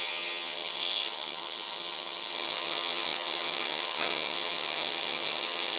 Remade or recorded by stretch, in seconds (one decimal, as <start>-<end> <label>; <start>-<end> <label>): 0.0-5.8 remade